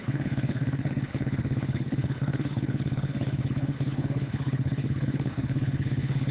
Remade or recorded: remade